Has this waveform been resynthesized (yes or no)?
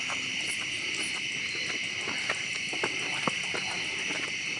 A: no